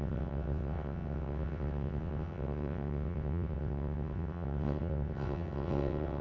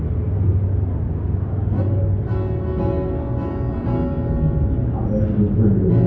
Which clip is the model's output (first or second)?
first